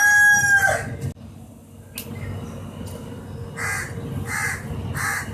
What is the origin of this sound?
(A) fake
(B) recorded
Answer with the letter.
B